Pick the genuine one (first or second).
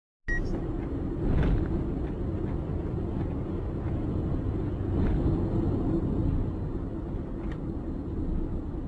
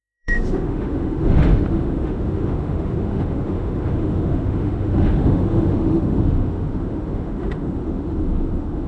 first